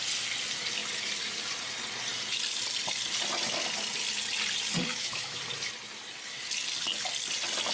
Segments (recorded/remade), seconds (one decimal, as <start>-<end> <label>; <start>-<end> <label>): 0.0-4.9 recorded; 4.9-5.4 remade; 5.4-7.7 recorded